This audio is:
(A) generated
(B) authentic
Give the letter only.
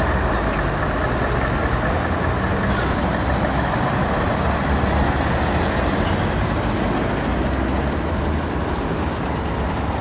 B